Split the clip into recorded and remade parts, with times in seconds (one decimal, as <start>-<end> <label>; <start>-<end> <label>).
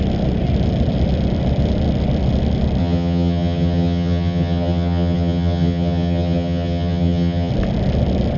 0.0-2.8 recorded; 2.8-7.5 remade; 7.5-8.4 recorded